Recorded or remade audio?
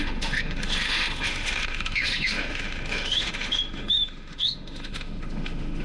remade